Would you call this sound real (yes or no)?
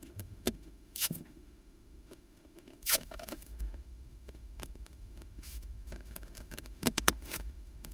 no